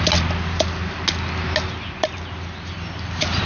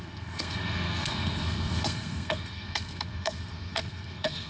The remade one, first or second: second